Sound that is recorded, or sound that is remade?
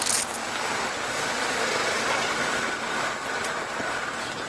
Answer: recorded